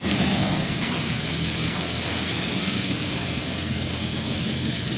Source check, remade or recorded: remade